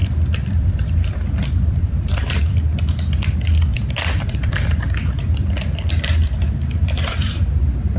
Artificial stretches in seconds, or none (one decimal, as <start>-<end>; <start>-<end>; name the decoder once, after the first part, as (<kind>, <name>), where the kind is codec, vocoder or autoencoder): 0.0-2.4 (vocoder, BigVGAN v2); 3.7-7.6